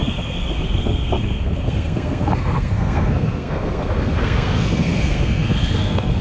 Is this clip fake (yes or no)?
yes